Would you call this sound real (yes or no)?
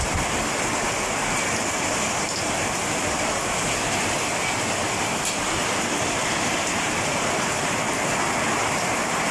yes